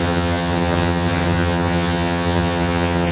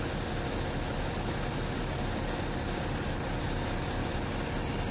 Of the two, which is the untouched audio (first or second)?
second